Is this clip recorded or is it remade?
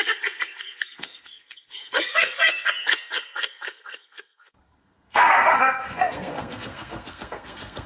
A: remade